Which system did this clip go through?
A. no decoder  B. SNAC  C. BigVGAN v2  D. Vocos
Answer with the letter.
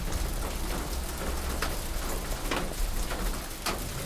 A